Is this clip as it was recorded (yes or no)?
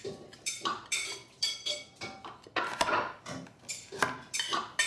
yes